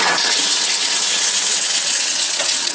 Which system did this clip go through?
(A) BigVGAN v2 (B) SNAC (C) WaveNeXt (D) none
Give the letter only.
C